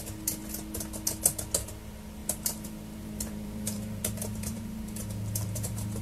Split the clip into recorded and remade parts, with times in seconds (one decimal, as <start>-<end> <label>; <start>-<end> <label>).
0.0-2.2 recorded; 2.2-6.0 remade